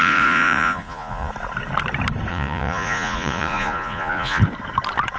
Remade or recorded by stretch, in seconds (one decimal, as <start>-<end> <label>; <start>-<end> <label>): 0.0-1.3 remade; 1.3-2.3 recorded; 2.3-4.4 remade; 4.4-5.2 recorded